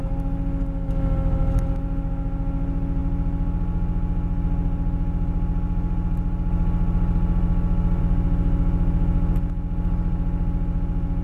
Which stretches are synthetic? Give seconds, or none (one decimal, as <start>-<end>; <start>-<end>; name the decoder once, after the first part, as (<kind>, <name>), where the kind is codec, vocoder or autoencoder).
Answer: none